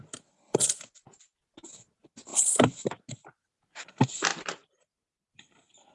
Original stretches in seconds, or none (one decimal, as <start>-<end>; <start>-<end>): 0.0-5.9